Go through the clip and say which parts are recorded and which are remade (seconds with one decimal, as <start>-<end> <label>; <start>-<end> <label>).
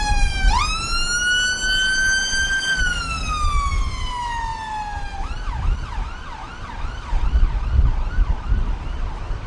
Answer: 0.0-9.5 recorded